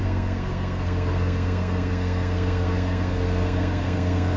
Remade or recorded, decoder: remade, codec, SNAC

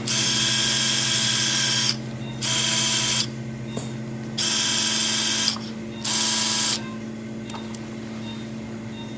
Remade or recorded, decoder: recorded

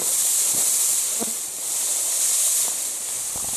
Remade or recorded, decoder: recorded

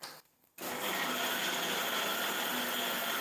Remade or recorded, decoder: recorded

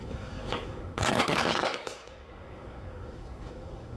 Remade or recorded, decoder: remade, codec, SNAC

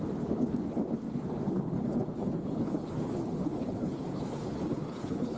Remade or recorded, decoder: remade, codec, HILCodec